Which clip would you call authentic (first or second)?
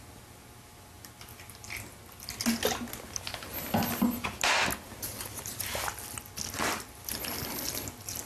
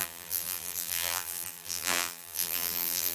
first